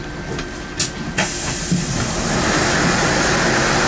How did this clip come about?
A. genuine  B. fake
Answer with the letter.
A